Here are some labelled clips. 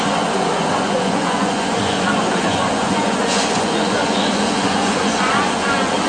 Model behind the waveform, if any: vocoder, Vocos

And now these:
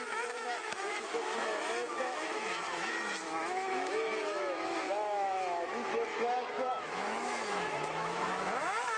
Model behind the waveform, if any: autoencoder, DAC-VAE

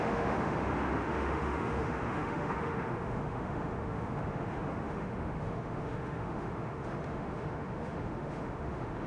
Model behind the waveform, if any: autoencoder, DAC-VAE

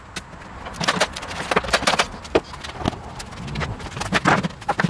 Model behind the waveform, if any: none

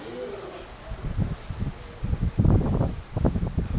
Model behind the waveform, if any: none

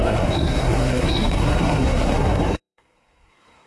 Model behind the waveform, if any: codec, SNAC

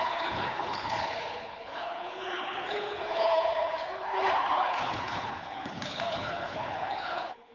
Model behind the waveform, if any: codec, HILCodec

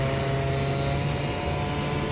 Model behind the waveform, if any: none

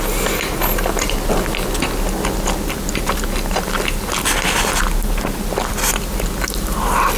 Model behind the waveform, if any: none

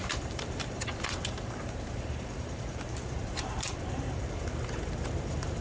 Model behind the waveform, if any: vocoder, BigVGAN v2